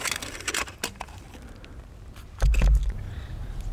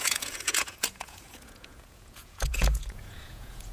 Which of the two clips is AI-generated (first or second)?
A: second